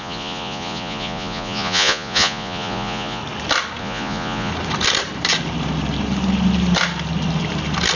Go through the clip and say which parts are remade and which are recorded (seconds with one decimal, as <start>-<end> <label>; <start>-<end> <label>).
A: 0.0-3.2 remade; 3.2-3.8 recorded; 3.8-4.5 remade; 4.5-8.0 recorded